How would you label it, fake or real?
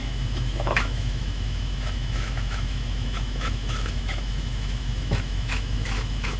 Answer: fake